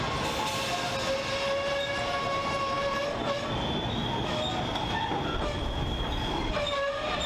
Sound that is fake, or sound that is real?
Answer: real